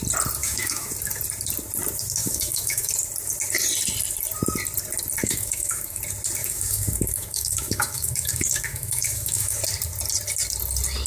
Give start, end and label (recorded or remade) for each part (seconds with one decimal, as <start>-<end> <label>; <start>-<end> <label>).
0.0-0.4 recorded; 0.4-0.9 remade; 0.9-2.2 recorded; 2.2-2.9 remade; 2.9-5.2 recorded; 5.2-6.0 remade; 6.0-6.4 recorded; 6.4-9.6 remade; 9.6-11.1 recorded